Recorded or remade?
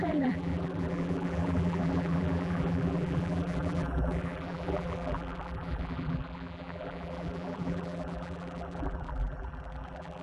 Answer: remade